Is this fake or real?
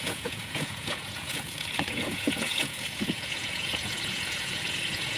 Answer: fake